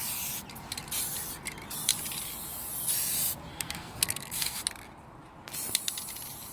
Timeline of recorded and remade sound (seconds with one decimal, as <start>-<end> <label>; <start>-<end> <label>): 0.0-3.5 recorded; 3.5-4.6 remade; 4.6-6.5 recorded